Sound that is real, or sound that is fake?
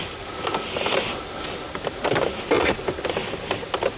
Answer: real